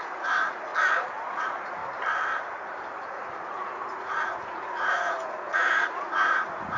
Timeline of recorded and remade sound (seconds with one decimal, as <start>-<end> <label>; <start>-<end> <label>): 0.0-0.7 remade; 0.7-1.3 recorded; 1.3-1.8 remade; 1.8-2.9 recorded; 2.9-6.8 remade

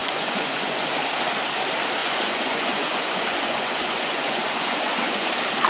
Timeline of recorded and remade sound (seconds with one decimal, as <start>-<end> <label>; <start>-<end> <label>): 0.0-0.9 remade; 0.9-2.0 recorded; 2.0-5.3 remade; 5.3-5.7 recorded